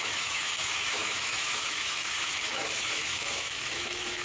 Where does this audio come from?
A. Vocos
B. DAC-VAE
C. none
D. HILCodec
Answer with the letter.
B